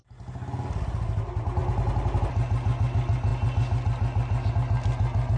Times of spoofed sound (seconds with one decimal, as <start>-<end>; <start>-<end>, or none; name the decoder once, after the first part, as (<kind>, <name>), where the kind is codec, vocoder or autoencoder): none